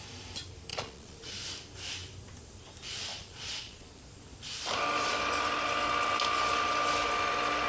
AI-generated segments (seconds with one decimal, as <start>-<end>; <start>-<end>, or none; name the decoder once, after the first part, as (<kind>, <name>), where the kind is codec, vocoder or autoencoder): 0.7-1.3 (vocoder, Vocos); 3.1-4.0